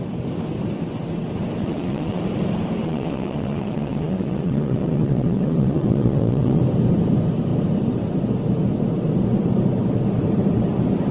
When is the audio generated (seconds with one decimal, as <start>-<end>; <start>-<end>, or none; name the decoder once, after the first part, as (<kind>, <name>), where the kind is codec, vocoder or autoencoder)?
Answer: 1.6-2.2 (vocoder, WaveNeXt); 2.8-6.6